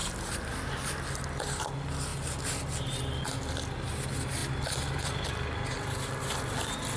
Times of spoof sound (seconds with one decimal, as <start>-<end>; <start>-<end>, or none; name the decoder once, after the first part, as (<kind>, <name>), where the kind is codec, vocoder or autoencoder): none